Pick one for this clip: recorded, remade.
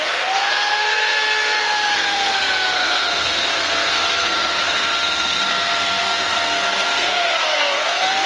remade